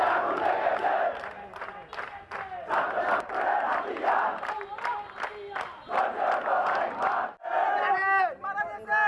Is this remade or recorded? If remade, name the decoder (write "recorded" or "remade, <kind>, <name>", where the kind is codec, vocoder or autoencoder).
recorded